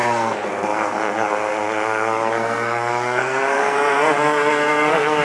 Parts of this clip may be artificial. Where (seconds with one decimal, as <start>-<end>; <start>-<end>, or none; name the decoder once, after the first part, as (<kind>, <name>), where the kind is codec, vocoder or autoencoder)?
0.0-5.2 (codec, SNAC)